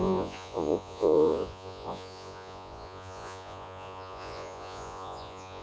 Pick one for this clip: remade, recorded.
remade